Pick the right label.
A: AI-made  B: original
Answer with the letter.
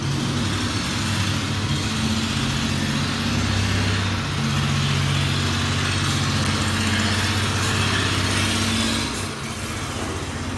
B